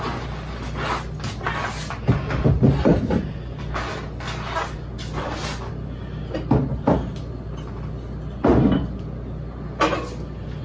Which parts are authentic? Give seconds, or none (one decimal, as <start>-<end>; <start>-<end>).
0.0-10.6